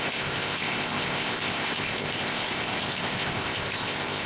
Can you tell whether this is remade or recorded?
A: remade